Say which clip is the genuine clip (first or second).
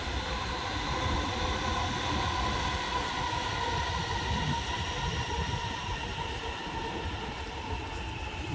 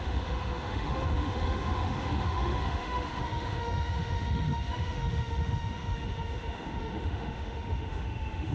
first